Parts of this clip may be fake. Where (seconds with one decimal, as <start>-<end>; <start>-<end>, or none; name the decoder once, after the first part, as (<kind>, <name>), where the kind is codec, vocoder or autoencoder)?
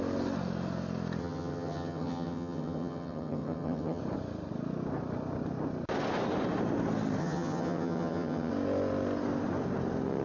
1.2-4.0 (vocoder, HiFi-GAN); 7.2-8.5